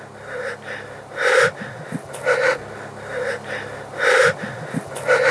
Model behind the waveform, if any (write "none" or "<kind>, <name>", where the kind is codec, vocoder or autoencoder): none